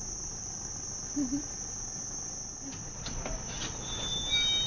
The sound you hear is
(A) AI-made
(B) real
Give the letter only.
B